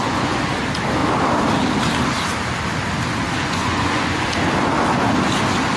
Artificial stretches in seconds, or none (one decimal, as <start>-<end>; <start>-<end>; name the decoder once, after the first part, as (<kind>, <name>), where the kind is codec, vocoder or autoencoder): 0.0-0.6 (vocoder, Vocos); 3.4-4.3